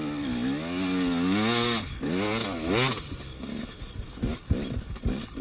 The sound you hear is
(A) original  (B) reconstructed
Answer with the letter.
A